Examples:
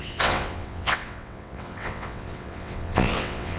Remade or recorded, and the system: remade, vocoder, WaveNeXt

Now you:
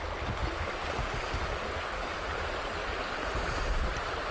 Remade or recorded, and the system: recorded